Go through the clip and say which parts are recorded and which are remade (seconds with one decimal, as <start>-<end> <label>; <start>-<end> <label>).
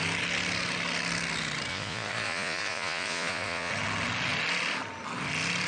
0.0-1.7 recorded; 1.7-3.7 remade; 3.7-5.7 recorded